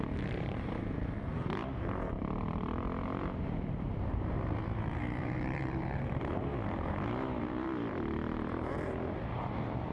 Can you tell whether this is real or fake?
fake